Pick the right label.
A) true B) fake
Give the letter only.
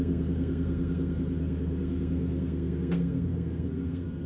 B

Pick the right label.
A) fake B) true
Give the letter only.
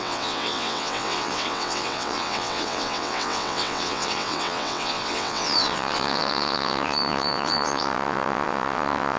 A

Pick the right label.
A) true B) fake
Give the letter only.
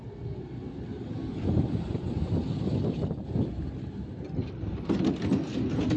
A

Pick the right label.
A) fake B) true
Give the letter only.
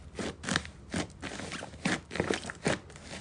B